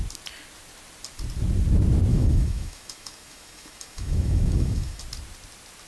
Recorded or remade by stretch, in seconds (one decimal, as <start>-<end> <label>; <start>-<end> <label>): 0.0-2.1 recorded; 2.1-5.0 remade; 5.0-5.9 recorded